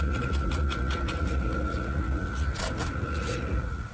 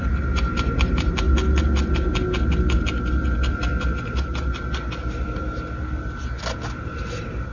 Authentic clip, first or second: second